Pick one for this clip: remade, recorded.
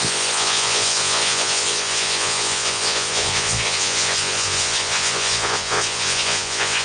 remade